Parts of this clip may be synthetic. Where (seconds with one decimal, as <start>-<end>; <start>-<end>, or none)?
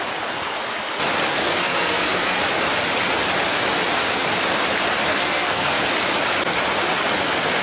1.3-2.4; 5.1-5.8